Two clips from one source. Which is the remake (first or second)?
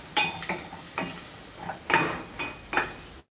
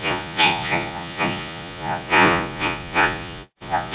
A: second